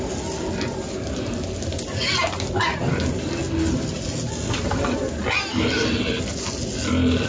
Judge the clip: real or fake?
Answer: real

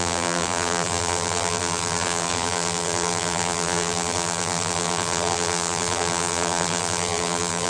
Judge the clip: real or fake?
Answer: fake